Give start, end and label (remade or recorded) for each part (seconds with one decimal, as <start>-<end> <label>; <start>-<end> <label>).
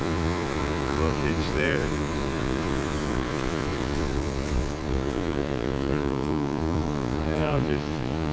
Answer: 0.0-8.3 remade